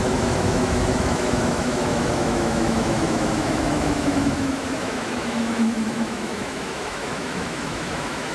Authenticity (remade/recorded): remade